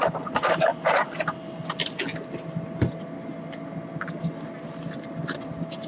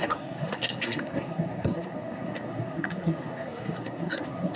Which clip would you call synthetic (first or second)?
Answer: second